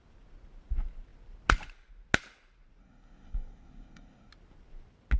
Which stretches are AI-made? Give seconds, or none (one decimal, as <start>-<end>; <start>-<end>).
2.8-4.3